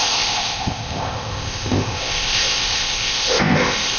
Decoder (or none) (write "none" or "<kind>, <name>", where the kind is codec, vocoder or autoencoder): codec, ZipCodec